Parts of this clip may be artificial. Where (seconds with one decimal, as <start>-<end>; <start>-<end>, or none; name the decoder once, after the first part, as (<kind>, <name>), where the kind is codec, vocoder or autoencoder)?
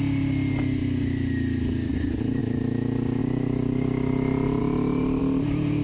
none